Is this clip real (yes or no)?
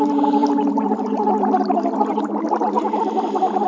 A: yes